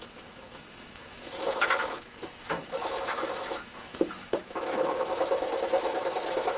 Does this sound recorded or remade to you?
remade